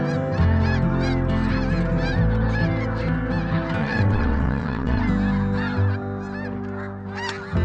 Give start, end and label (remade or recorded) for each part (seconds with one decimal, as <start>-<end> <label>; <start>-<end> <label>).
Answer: 0.0-3.8 recorded; 3.8-5.0 remade; 5.0-7.6 recorded